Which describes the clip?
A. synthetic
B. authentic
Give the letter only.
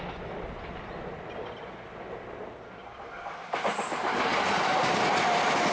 B